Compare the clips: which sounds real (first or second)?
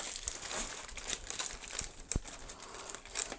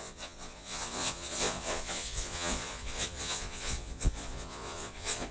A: first